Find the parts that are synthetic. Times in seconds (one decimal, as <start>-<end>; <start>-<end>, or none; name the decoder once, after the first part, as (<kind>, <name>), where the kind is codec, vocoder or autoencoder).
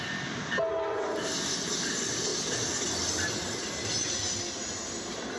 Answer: none